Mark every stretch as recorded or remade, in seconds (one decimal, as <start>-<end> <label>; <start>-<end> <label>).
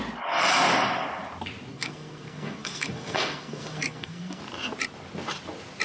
0.0-1.7 recorded; 1.7-4.4 remade; 4.4-5.8 recorded